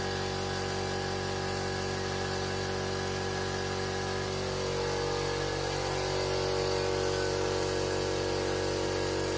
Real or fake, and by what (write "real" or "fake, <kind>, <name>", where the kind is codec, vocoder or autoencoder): real